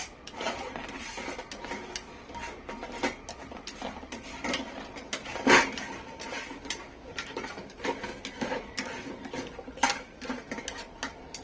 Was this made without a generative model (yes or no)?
yes